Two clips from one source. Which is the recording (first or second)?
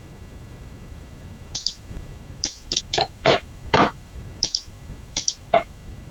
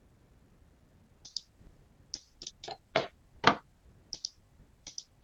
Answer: second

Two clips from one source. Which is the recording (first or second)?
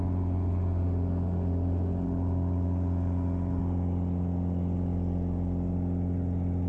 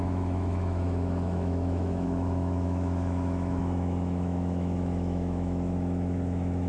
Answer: first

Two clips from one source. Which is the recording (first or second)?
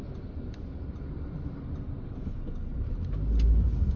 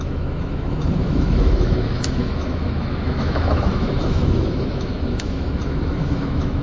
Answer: first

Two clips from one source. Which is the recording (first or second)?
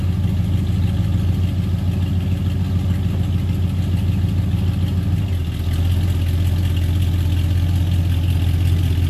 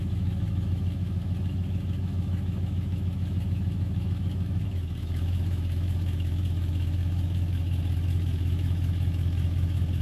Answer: first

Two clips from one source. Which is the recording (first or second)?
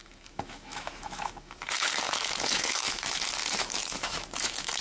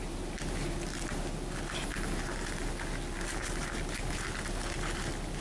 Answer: second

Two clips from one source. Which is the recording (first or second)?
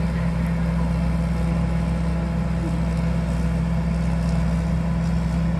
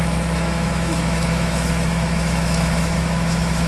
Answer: first